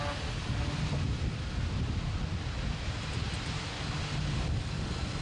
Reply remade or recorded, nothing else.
recorded